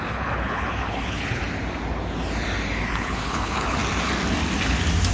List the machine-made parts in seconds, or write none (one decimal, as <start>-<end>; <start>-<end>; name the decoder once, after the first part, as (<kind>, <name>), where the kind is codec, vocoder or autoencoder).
0.0-1.4 (codec, HILCodec); 2.9-3.8